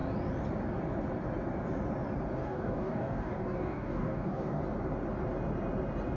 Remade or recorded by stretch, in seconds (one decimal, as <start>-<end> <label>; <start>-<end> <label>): 0.0-2.4 recorded; 2.4-4.6 remade; 4.6-6.2 recorded